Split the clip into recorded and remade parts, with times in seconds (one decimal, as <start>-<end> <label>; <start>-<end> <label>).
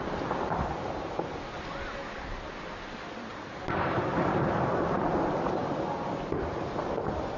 0.0-3.3 recorded; 3.3-4.5 remade; 4.5-7.4 recorded